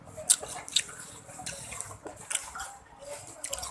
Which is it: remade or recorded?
recorded